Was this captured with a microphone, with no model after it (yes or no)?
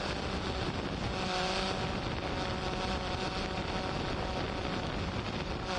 yes